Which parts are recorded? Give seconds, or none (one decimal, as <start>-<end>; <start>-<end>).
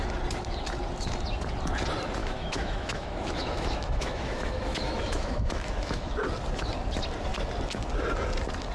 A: 0.0-2.2; 6.1-8.7